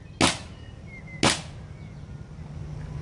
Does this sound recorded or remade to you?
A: recorded